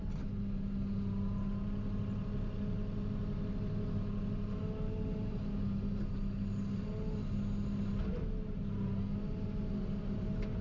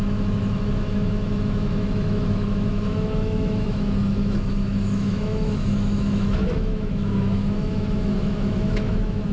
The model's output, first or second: second